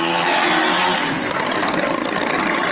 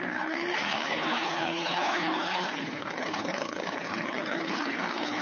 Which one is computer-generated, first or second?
second